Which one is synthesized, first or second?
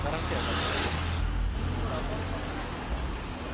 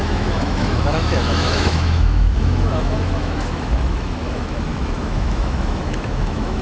second